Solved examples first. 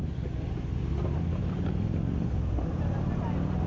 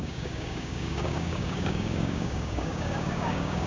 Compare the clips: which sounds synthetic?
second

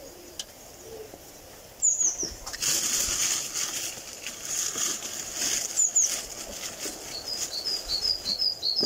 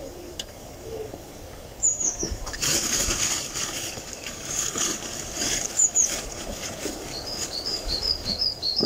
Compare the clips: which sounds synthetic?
second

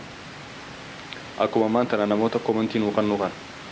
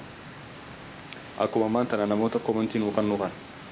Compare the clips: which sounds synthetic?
second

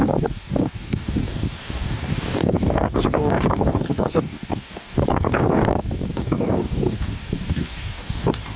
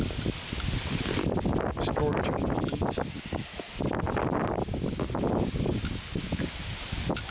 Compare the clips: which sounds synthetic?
first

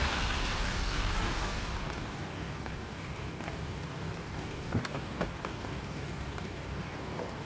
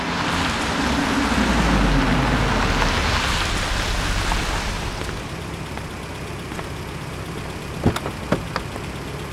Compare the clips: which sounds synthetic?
first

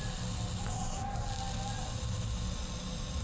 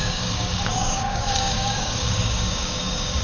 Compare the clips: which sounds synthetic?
second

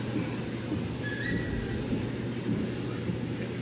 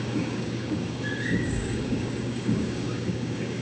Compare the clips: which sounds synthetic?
second